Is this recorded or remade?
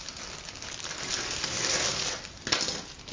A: recorded